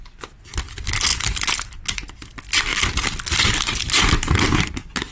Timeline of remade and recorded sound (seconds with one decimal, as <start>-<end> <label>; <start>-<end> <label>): 0.0-5.1 recorded